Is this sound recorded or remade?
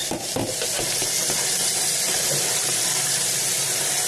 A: recorded